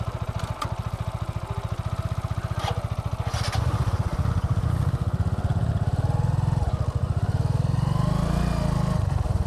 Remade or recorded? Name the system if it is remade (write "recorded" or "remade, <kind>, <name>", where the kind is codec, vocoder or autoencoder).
recorded